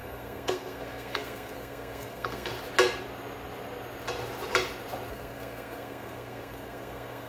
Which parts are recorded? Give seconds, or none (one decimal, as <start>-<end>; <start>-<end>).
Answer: 2.5-5.1